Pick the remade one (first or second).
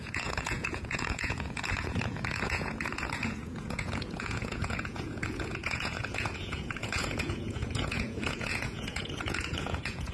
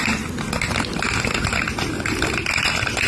first